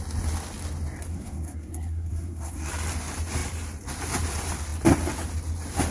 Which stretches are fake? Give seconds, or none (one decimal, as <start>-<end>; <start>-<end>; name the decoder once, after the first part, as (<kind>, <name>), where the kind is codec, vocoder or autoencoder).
1.1-2.7 (codec, SNAC)